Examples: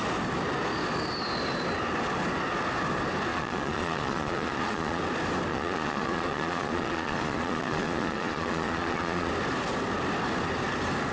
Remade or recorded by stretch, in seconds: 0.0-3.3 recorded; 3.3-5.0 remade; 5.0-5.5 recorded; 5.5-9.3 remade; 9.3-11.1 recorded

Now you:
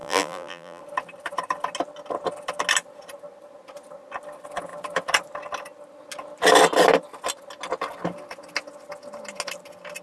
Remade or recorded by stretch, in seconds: 0.0-0.8 remade; 0.8-10.0 recorded

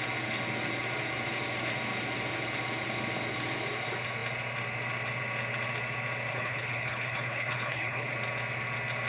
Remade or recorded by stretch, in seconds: 0.0-6.3 recorded; 6.3-8.1 remade; 8.1-9.1 recorded

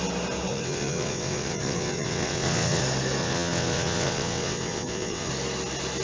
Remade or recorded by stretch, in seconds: 0.0-0.5 recorded; 0.5-2.8 remade; 2.8-3.2 recorded; 3.2-5.3 remade; 5.3-6.0 recorded

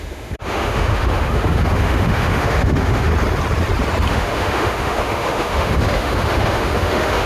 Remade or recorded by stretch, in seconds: 0.0-3.1 remade; 3.1-4.1 recorded; 4.1-7.3 remade

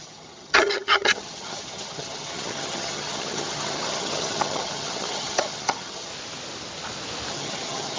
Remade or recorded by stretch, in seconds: 0.0-6.1 remade; 6.1-7.3 recorded; 7.3-8.0 remade

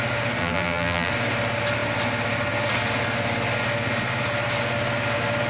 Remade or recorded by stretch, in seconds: 0.0-0.4 recorded; 0.4-1.1 remade; 1.1-5.5 recorded

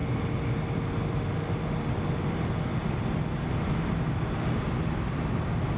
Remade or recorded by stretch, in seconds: 0.0-5.8 recorded